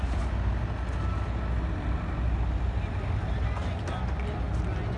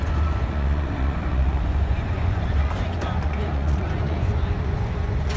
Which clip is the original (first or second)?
first